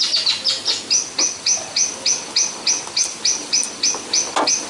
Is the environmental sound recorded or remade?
recorded